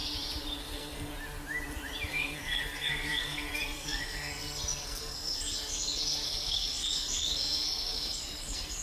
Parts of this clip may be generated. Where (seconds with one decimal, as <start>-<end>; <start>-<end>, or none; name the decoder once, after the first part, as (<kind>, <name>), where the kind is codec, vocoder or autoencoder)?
0.6-1.1 (codec, SNAC); 2.1-8.8